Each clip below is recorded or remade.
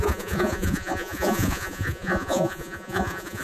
remade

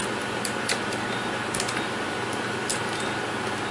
recorded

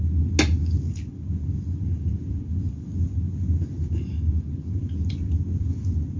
recorded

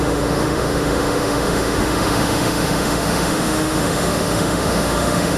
remade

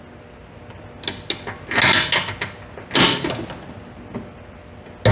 recorded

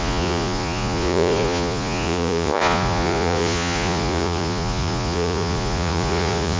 remade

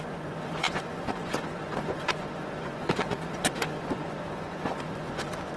remade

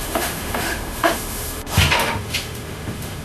remade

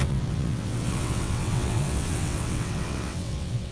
remade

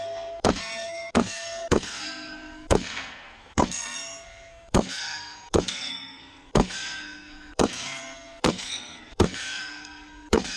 remade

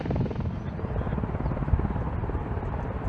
recorded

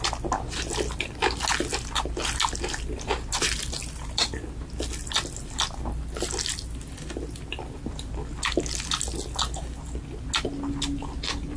recorded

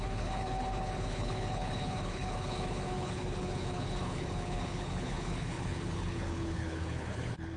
remade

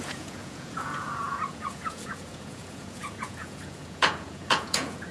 remade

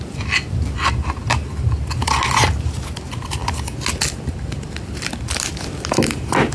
recorded